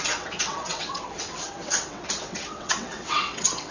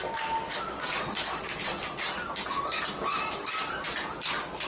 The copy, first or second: first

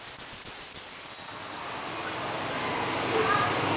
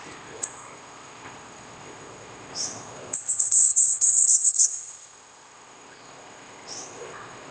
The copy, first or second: second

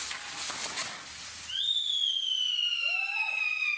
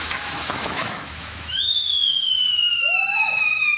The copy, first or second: second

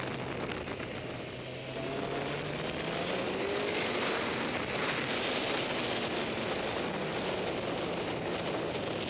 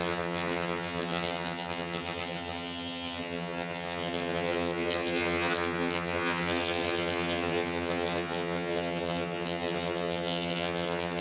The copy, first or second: second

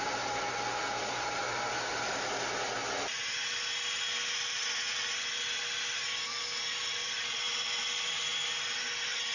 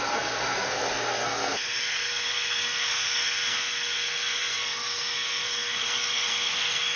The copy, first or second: second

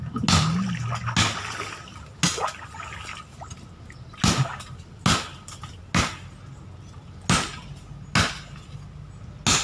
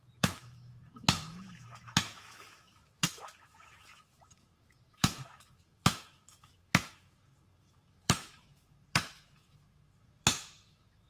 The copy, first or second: second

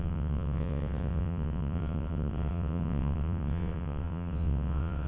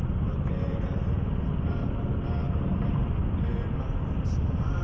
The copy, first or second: first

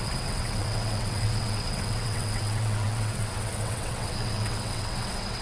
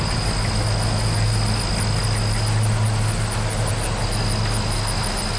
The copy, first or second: first